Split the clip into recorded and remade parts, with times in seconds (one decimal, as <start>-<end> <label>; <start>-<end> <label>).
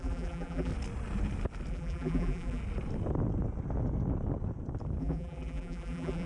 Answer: 0.0-0.7 remade; 0.7-1.7 recorded; 1.7-2.6 remade; 2.6-5.0 recorded; 5.0-6.3 remade